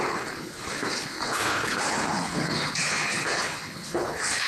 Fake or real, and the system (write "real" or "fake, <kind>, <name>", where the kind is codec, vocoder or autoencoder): fake, codec, HILCodec